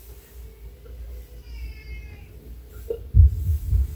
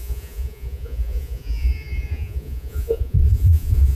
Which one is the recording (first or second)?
first